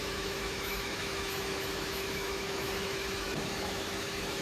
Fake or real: fake